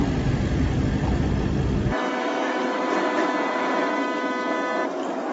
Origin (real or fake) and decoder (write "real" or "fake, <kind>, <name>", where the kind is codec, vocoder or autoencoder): real